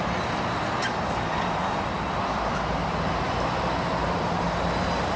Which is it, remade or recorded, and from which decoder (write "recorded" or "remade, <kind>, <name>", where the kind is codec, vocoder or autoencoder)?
recorded